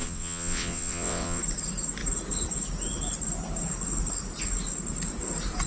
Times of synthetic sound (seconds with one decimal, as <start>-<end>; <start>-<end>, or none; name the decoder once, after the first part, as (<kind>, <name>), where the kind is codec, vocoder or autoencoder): 0.0-1.4 (vocoder, WaveNeXt)